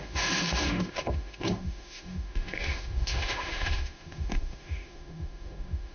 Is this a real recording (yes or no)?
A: no